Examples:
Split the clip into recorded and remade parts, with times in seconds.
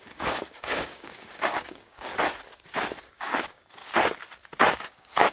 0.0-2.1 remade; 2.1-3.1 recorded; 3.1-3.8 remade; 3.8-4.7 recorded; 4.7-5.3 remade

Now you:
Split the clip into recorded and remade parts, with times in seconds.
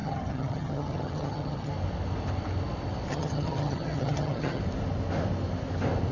0.0-1.7 remade; 1.7-3.1 recorded; 3.1-4.6 remade; 4.6-6.1 recorded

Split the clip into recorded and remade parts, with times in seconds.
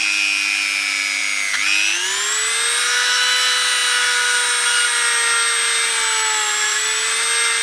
0.0-7.6 recorded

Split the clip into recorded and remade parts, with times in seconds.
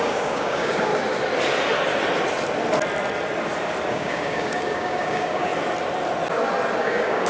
0.0-0.9 remade; 0.9-3.9 recorded; 3.9-5.5 remade; 5.5-6.8 recorded; 6.8-7.3 remade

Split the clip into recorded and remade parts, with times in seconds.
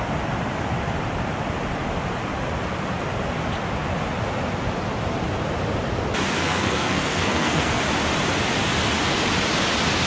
0.0-6.4 recorded; 6.4-7.8 remade; 7.8-10.1 recorded